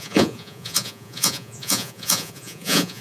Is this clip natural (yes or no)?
no